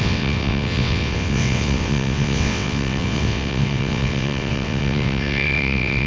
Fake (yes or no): yes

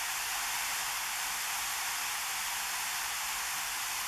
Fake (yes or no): no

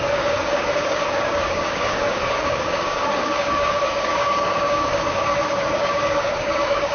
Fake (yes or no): yes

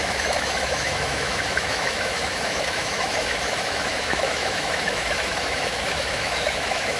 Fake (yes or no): yes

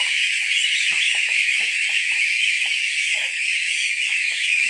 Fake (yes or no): yes